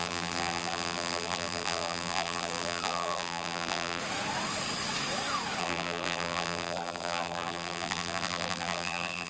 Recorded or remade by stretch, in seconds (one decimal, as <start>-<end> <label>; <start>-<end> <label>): 0.0-4.0 remade; 4.0-5.6 recorded; 5.6-9.3 remade